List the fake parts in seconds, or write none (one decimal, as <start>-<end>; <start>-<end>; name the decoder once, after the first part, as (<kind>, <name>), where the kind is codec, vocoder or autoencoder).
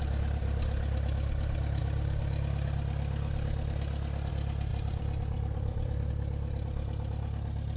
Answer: 4.7-6.1 (vocoder, BigVGAN v2)